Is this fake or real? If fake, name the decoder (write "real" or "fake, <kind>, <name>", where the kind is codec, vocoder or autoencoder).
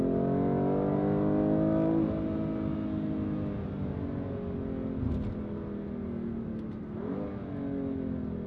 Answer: real